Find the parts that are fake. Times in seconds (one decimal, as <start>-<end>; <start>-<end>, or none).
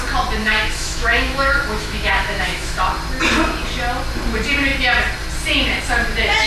0.4-2.8